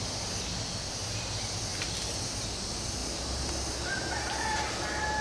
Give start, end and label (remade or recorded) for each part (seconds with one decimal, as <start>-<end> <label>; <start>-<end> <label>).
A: 0.0-1.7 recorded; 1.7-2.2 remade; 2.2-5.2 recorded